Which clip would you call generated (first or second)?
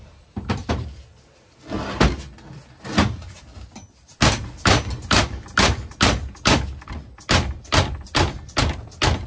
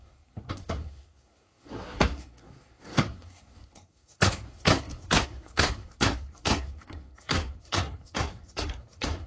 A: second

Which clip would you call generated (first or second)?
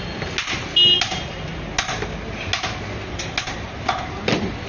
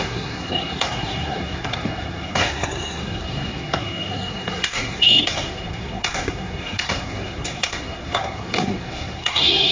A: second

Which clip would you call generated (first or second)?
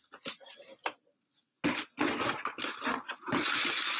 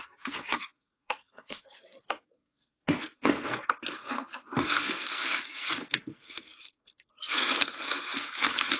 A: second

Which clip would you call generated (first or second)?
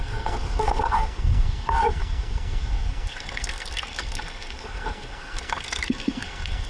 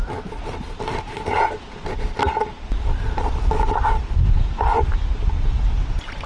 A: first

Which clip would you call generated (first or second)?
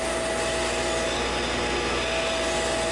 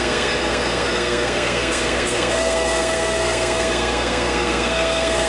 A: second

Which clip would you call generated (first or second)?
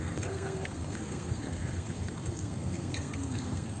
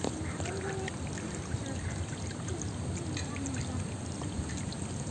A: first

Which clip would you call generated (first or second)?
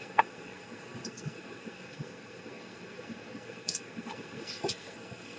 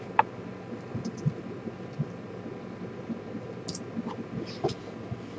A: first